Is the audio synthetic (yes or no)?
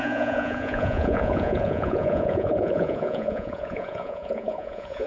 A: yes